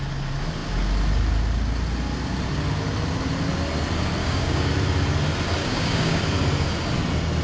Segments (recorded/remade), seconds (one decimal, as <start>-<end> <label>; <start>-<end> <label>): 0.0-4.2 recorded; 4.2-4.7 remade; 4.7-5.6 recorded; 5.6-6.2 remade; 6.2-7.4 recorded